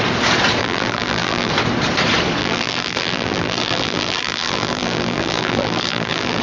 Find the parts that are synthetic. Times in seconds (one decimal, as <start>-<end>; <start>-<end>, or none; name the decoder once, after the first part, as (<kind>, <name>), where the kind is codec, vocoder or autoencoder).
0.6-1.5 (vocoder, BigVGAN v2); 2.4-6.4